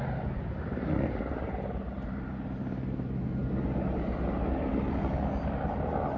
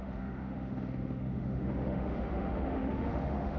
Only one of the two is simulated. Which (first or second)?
second